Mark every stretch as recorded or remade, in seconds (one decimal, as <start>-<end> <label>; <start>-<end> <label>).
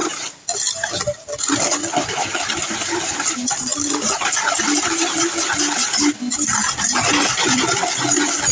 0.0-8.5 recorded